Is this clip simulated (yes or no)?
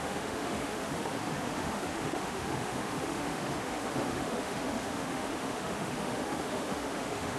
yes